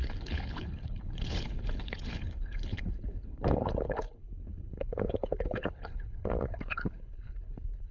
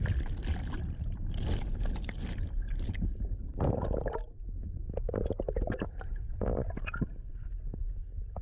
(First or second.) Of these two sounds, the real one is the second